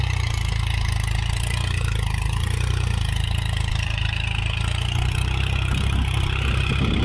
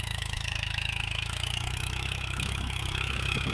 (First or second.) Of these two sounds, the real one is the first